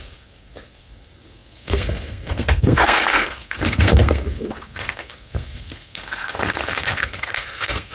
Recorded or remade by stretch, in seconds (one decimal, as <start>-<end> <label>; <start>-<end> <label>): 0.0-7.9 remade